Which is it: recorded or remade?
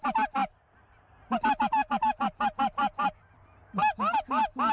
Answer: recorded